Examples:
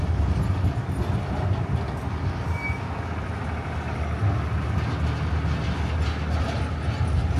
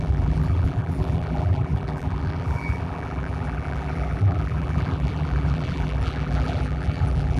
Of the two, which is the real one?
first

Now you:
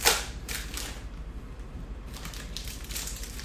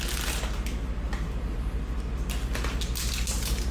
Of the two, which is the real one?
second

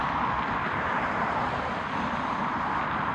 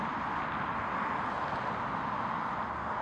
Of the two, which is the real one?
second